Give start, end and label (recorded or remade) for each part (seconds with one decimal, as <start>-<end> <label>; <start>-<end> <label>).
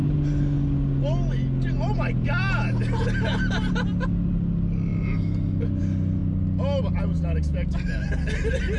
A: 0.0-8.8 recorded